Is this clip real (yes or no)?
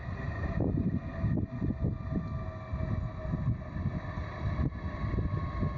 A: yes